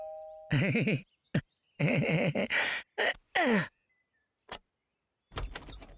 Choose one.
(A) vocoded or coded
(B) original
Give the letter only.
B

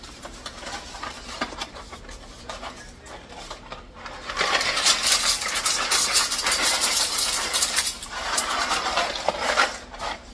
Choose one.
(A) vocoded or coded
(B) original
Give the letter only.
A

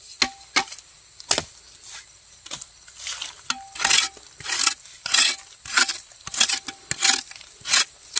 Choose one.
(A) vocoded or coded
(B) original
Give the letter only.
B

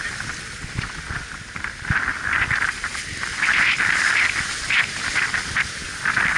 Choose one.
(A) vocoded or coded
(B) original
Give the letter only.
A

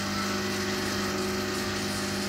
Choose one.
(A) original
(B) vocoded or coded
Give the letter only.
A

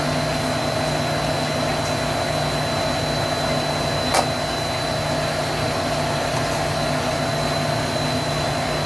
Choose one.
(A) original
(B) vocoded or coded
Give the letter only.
A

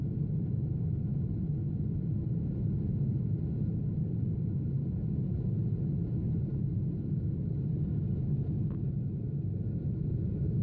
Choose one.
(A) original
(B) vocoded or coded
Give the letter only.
A